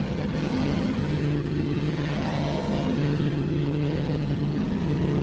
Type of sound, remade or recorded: remade